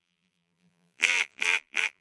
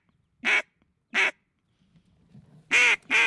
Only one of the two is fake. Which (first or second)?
first